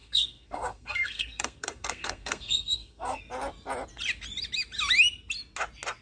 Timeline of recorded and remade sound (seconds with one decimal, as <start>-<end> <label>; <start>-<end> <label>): 0.0-3.2 remade; 3.2-6.0 recorded